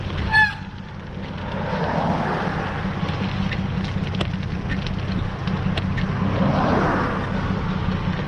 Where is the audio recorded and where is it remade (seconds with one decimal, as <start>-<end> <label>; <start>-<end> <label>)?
0.0-8.3 recorded